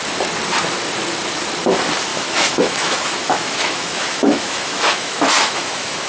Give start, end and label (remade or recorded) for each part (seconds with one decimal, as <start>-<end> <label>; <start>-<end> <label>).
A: 0.0-2.1 recorded; 2.1-6.1 remade